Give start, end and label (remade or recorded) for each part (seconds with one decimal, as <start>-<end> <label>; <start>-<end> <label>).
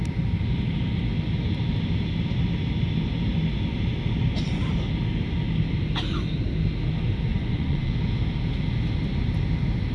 0.0-7.3 recorded; 7.3-7.9 remade; 7.9-9.9 recorded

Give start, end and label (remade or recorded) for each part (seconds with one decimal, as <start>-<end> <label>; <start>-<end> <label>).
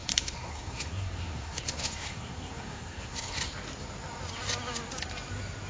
0.0-3.4 remade; 3.4-5.7 recorded